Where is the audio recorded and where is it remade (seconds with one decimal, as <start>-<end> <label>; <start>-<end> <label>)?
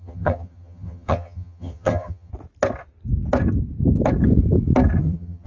0.0-2.3 remade; 2.3-5.0 recorded; 5.0-5.5 remade